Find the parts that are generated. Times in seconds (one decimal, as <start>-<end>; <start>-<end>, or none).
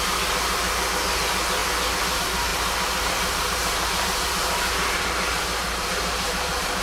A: 2.5-6.8